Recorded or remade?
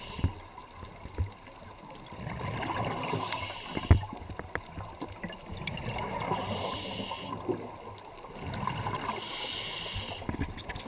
recorded